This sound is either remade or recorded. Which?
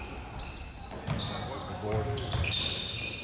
recorded